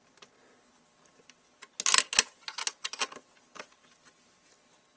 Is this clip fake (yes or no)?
no